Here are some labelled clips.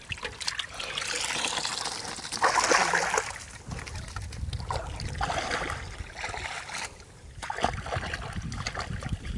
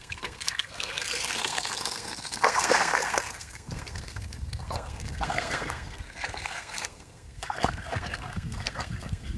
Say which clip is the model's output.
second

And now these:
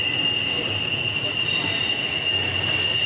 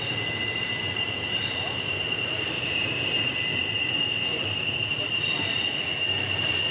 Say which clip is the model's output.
second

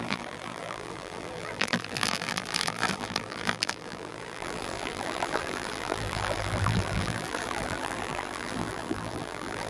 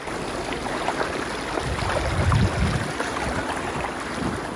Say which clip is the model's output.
first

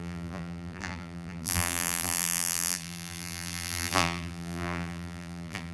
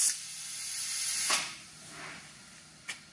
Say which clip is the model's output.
first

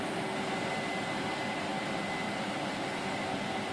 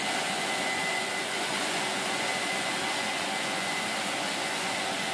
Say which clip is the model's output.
second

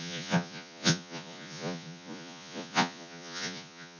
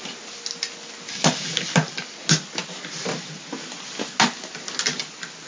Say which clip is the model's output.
first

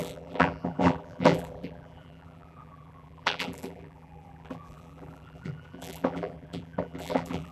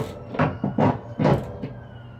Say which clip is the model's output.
first